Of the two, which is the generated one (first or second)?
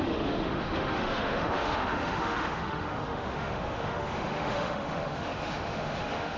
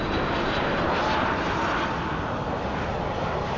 first